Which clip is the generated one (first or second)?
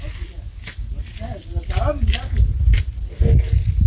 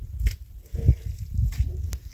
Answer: second